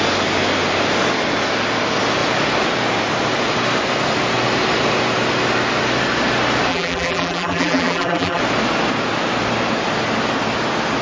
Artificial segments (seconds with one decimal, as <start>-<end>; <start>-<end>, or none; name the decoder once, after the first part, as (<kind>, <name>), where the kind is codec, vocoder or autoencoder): 6.7-8.4 (vocoder, BigVGAN v2)